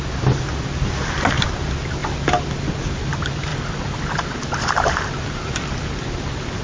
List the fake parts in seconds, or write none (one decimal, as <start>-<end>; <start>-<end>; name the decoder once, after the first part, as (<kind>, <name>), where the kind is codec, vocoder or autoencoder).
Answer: none